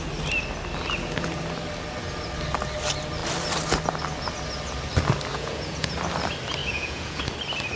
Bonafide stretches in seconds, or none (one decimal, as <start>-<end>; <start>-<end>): 0.0-5.3; 5.9-6.6; 7.2-7.8